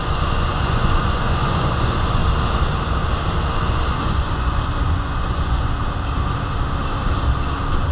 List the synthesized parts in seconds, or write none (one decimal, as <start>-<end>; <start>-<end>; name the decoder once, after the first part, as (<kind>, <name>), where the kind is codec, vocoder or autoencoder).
0.0-2.2 (vocoder, Vocos); 3.9-5.8